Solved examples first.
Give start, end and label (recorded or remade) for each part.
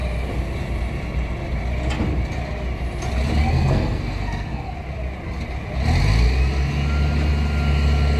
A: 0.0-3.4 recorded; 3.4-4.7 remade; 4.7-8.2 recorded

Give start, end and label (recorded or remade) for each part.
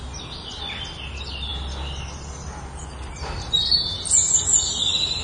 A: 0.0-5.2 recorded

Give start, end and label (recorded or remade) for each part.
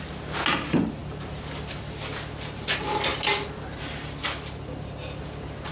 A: 0.0-5.7 recorded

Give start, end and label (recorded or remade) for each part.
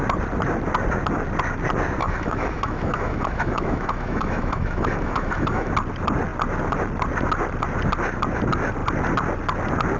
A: 0.0-2.0 recorded; 2.0-5.7 remade; 5.7-10.0 recorded